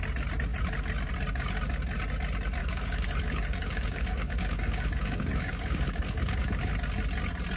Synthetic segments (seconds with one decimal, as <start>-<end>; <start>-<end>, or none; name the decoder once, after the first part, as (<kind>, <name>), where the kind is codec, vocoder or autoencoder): 2.6-6.7 (codec, DAC)